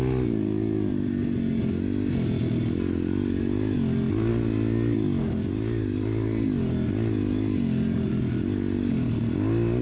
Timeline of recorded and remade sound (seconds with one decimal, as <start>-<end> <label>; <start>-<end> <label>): 0.0-9.8 recorded